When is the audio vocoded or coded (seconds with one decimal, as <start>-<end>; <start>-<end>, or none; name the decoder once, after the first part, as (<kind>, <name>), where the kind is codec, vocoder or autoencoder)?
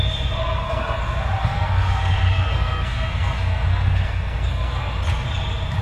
0.4-1.0 (codec, SNAC); 1.4-4.9